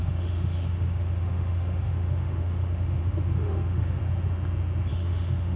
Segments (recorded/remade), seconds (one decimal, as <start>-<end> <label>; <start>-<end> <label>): 0.0-4.0 remade; 4.0-4.9 recorded; 4.9-5.6 remade